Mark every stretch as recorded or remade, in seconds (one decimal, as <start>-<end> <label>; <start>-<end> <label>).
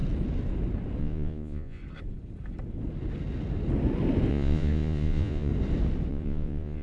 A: 0.0-1.0 recorded; 1.0-1.8 remade; 1.8-4.3 recorded; 4.3-5.5 remade; 5.5-6.1 recorded; 6.1-6.8 remade